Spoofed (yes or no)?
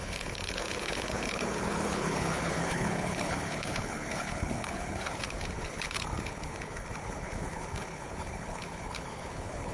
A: yes